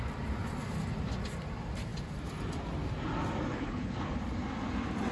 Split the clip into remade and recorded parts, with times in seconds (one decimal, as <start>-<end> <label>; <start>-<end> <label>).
0.0-3.5 recorded; 3.5-4.2 remade; 4.2-5.1 recorded